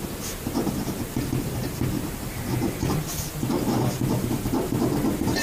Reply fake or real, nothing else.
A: real